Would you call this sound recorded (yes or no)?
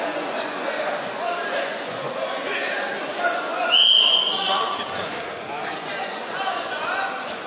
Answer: no